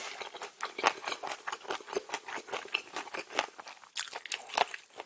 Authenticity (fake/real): real